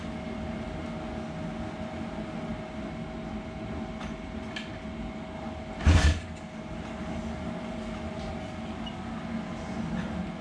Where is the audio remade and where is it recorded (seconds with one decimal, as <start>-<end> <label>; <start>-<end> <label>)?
0.0-10.4 recorded